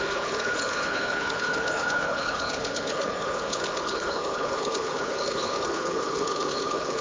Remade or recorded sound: remade